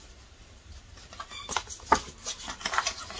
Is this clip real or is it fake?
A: real